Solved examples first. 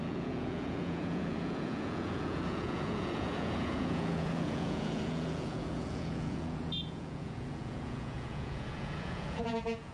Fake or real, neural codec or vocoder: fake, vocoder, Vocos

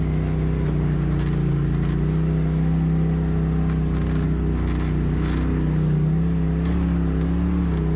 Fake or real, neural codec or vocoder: real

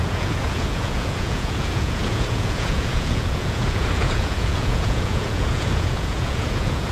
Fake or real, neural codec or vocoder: fake, vocoder, Vocos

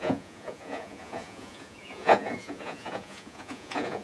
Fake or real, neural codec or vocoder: fake, vocoder, Vocos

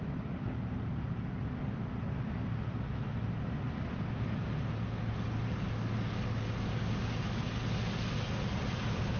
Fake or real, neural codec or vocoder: real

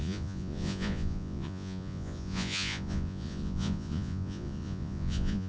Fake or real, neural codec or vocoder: fake, vocoder, Vocos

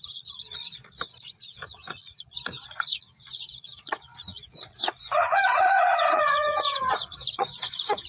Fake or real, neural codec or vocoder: fake, vocoder, Vocos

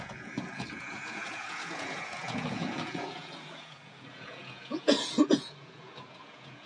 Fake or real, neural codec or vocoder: fake, vocoder, Vocos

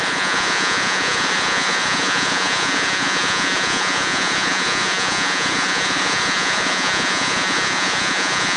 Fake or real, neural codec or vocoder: fake, vocoder, Vocos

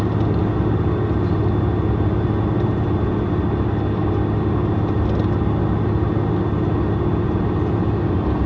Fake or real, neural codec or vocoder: real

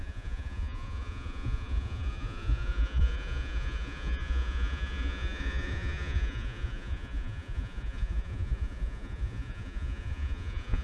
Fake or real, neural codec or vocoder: fake, vocoder, Vocos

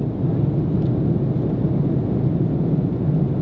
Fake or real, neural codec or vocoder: real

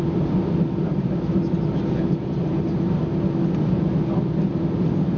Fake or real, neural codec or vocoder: real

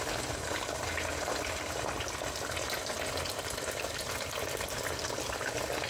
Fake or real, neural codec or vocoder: real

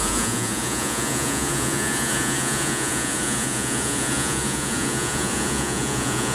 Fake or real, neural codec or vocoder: fake, vocoder, Vocos